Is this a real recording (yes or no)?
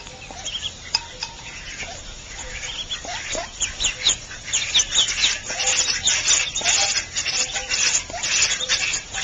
no